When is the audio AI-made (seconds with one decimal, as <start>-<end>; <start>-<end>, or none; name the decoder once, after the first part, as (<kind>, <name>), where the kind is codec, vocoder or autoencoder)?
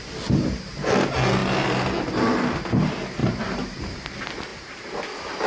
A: 3.2-3.8 (vocoder, BigVGAN v2); 4.5-5.0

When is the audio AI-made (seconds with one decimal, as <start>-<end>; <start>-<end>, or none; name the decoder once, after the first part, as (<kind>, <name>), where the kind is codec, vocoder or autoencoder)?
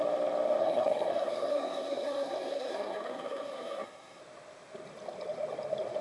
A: 0.6-4.2 (codec, SNAC)